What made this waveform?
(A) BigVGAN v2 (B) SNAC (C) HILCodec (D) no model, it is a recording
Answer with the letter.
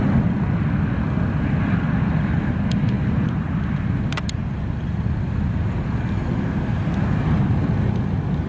D